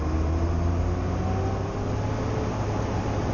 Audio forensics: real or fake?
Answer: real